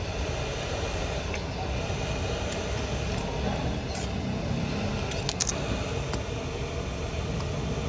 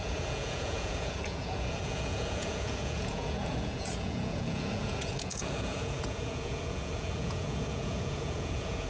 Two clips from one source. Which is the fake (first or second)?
second